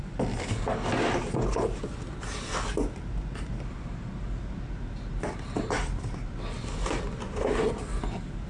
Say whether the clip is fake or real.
real